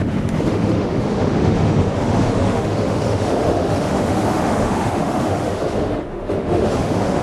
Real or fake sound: fake